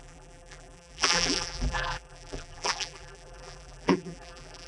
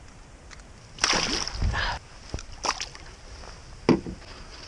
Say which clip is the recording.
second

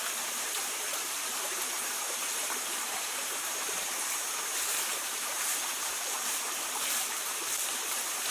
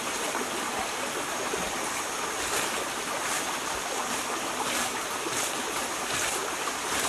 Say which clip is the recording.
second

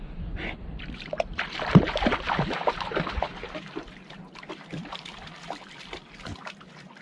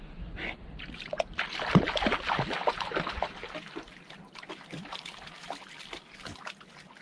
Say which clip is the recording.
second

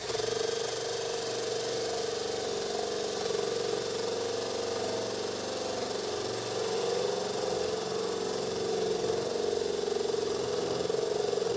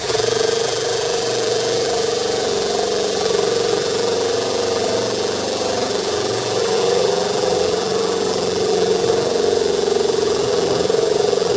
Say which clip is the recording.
first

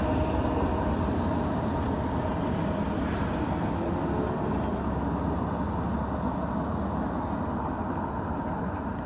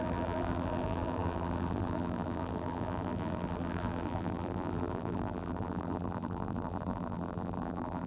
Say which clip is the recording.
first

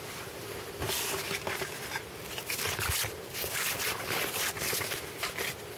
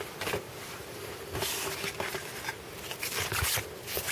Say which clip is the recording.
second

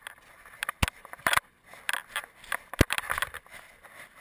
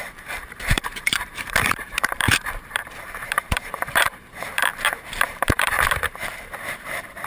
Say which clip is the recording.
first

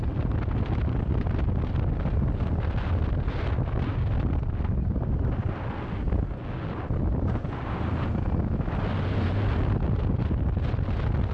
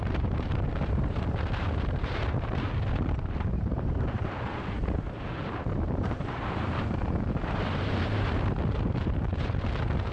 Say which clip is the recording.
first